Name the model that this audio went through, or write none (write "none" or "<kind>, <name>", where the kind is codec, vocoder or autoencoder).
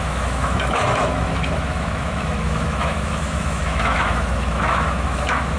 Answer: autoencoder, DAC-VAE